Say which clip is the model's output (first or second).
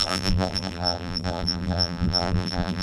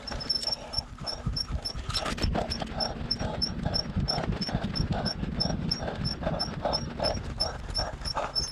first